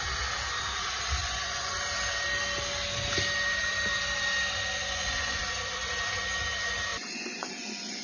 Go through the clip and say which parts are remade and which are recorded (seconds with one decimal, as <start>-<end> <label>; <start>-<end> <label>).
0.0-1.2 recorded; 1.2-1.8 remade; 1.8-4.8 recorded; 4.8-5.4 remade; 5.4-6.9 recorded; 6.9-8.0 remade